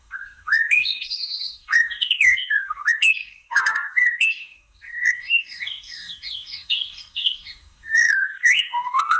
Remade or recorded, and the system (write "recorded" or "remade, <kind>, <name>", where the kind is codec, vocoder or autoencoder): remade, codec, DAC